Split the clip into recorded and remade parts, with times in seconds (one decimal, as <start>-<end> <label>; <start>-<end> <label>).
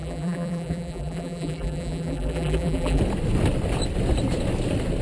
0.0-3.0 remade; 3.0-5.0 recorded